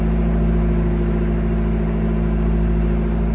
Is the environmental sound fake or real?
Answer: real